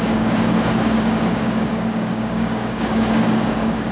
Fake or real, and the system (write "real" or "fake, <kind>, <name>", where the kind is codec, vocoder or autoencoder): fake, codec, DAC